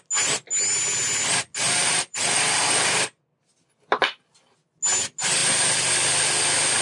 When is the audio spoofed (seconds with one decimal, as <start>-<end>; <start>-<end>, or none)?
1.8-3.2